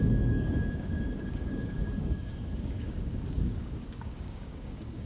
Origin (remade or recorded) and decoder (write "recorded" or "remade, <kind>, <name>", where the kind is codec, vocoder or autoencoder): remade, codec, DAC